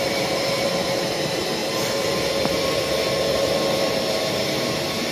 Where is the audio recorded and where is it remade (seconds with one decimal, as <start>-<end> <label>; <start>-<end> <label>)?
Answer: 0.0-1.6 remade; 1.6-2.4 recorded; 2.4-3.0 remade; 3.0-4.1 recorded; 4.1-5.1 remade